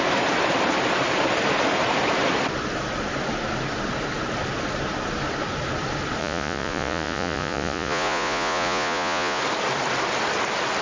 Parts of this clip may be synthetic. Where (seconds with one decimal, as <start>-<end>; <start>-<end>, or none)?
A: 6.2-9.4